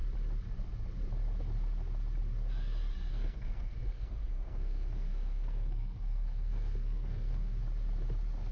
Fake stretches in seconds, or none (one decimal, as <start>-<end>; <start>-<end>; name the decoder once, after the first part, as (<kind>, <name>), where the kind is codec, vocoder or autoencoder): 3.1-7.6 (codec, SNAC)